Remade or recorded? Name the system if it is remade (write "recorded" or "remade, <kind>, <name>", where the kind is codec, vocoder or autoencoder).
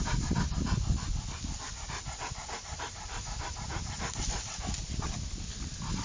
recorded